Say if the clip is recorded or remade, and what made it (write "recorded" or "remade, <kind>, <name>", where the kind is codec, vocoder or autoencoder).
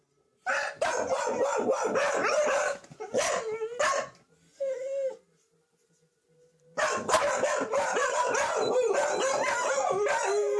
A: recorded